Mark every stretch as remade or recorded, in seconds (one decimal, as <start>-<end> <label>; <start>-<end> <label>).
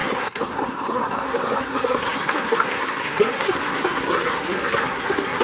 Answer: 0.0-5.4 remade